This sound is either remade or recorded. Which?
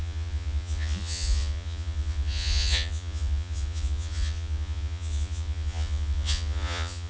remade